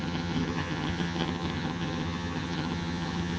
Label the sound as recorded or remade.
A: remade